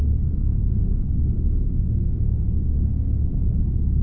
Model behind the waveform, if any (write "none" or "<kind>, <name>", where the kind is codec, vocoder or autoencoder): codec, SNAC